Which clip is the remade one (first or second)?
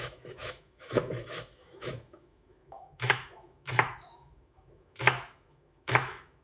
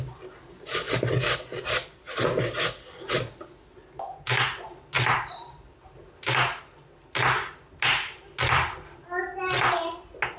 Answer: first